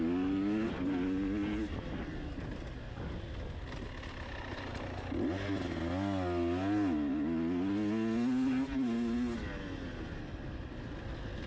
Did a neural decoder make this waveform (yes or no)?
no